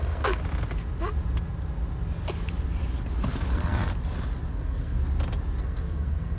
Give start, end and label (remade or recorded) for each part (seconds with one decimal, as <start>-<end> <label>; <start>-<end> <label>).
0.0-0.4 remade; 0.4-3.5 recorded; 3.5-3.9 remade; 3.9-4.5 recorded; 4.5-5.0 remade; 5.0-5.6 recorded; 5.6-6.4 remade